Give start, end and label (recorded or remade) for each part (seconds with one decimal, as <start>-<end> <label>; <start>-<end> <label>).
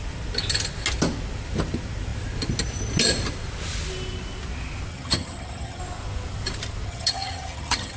0.0-4.9 recorded; 4.9-5.8 remade; 5.8-6.9 recorded; 6.9-8.0 remade